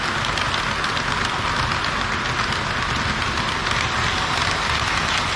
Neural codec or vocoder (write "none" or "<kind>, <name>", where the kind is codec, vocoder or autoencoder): none